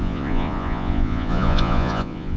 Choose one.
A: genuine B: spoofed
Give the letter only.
B